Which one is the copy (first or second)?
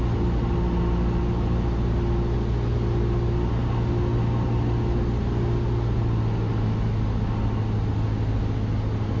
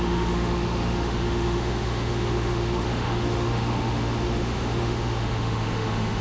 second